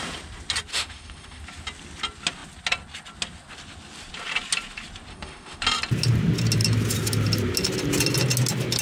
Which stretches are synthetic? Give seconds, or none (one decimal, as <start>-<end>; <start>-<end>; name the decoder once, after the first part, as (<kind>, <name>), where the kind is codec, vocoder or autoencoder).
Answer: 0.7-1.4 (autoencoder, DAC-VAE); 5.1-5.6